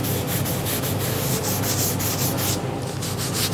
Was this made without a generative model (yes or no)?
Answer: yes